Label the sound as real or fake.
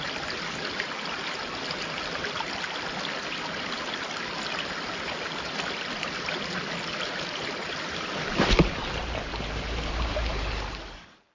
real